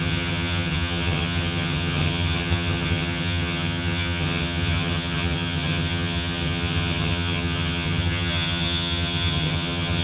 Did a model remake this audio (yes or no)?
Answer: yes